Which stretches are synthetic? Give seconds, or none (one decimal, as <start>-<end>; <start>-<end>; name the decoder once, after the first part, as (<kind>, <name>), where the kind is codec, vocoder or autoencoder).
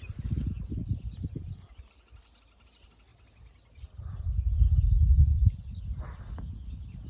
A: none